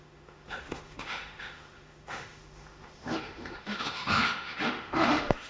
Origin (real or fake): fake